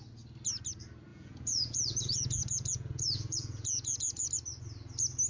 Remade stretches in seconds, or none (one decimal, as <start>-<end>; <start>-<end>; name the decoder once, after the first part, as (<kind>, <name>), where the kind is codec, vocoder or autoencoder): 1.1-4.3 (vocoder, Vocos)